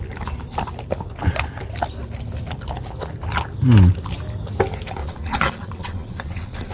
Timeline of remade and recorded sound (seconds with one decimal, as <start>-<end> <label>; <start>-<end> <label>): 0.0-5.0 recorded; 5.0-6.7 remade